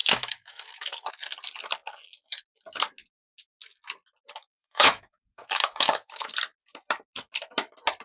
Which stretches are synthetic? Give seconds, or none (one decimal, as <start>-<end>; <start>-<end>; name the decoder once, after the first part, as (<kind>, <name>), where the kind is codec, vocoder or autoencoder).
0.0-1.1 (autoencoder, DAC-VAE); 4.4-6.3